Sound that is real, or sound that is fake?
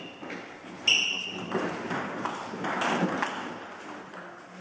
real